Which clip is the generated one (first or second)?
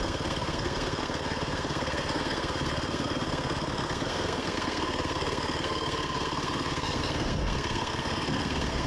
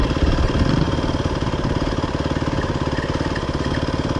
first